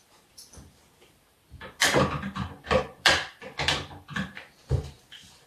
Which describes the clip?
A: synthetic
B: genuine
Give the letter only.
A